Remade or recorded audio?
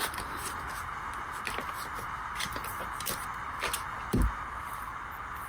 recorded